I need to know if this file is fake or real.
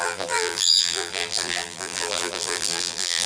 fake